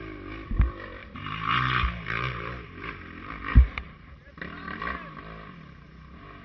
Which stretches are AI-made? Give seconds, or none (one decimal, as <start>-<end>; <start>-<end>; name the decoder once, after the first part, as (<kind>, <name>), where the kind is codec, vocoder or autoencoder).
1.0-4.8 (vocoder, BigVGAN v2)

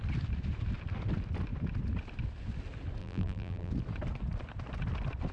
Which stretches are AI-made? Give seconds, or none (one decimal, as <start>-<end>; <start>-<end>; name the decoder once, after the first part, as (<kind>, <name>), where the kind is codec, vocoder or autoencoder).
3.0-3.7 (vocoder, BigVGAN v2)

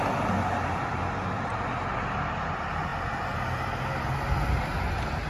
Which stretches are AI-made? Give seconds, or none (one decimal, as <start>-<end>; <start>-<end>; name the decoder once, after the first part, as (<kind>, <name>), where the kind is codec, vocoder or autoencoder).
2.9-3.8 (vocoder, BigVGAN v2)

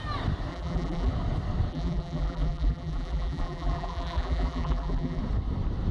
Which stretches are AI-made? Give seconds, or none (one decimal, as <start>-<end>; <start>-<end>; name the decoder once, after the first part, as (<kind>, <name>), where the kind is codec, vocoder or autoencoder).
0.5-1.1 (vocoder, BigVGAN v2); 1.7-5.2

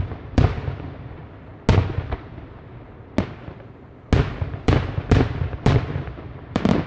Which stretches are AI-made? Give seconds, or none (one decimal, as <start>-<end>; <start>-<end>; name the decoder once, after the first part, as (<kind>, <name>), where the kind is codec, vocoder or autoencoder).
0.0-1.5 (vocoder, BigVGAN v2); 4.3-6.9

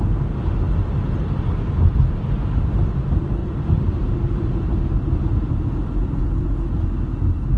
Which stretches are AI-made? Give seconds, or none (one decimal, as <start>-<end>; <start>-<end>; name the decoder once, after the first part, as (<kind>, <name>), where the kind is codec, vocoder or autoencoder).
3.4-4.1 (vocoder, BigVGAN v2)